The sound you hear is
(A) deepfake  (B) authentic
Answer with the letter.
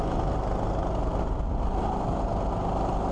B